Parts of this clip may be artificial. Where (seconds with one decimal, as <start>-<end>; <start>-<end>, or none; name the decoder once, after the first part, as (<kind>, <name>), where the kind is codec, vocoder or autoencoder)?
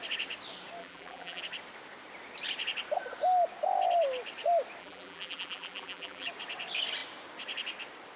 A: 0.8-1.4 (vocoder, BigVGAN v2); 4.8-6.3